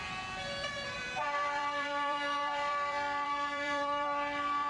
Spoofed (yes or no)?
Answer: yes